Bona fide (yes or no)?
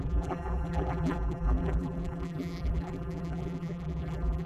no